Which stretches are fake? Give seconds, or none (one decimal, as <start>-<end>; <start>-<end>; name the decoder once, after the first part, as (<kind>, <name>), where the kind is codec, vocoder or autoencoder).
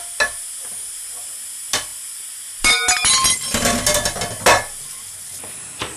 none